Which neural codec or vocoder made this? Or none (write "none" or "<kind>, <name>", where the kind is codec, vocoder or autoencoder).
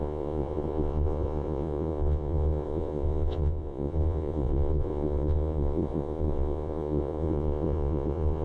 vocoder, Vocos